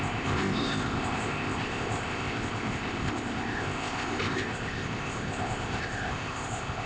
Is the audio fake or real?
fake